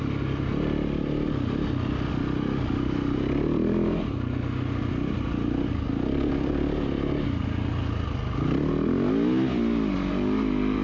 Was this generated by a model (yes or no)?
no